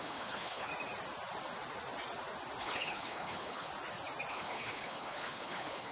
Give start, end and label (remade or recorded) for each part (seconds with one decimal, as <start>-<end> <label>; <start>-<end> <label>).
0.0-0.7 remade; 0.7-2.6 recorded; 2.6-3.7 remade; 3.7-4.3 recorded; 4.3-5.9 remade